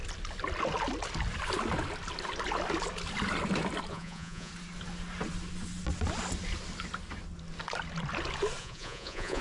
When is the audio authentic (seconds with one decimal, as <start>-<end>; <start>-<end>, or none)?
0.0-3.9; 4.5-8.6